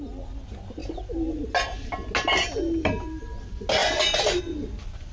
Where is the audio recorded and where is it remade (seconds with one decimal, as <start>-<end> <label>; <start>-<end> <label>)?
0.0-5.1 recorded